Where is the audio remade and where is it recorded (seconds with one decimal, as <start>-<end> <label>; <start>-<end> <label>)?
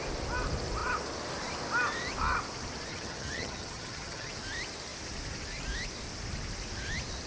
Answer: 0.0-2.9 recorded; 2.9-4.3 remade; 4.3-7.3 recorded